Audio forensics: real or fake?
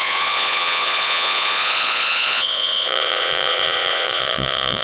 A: fake